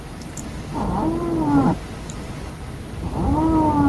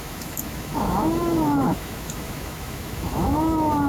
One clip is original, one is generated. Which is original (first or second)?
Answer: first